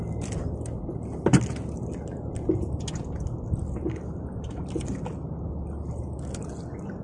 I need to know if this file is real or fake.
real